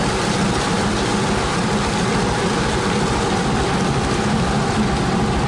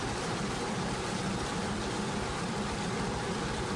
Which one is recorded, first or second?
first